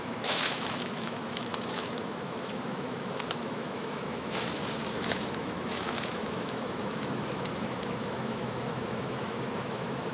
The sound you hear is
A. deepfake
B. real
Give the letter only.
A